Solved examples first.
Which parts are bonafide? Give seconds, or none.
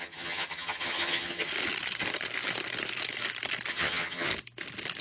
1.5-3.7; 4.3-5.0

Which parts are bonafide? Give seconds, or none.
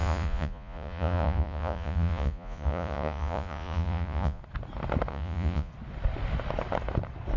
4.4-5.1; 5.7-7.4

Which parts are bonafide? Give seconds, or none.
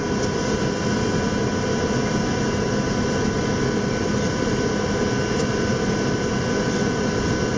0.0-7.6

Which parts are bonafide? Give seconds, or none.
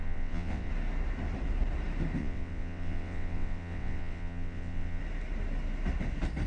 0.7-2.2; 5.0-6.5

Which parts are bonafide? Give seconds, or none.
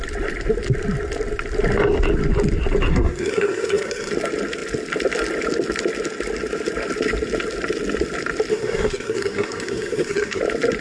0.0-2.9; 4.1-8.5; 10.4-10.8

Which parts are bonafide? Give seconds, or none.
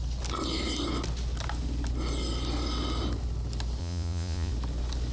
0.0-3.8; 4.5-5.1